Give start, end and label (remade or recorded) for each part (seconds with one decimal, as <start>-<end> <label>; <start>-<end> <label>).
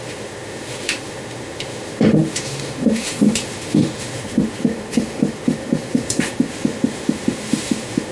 0.0-8.1 remade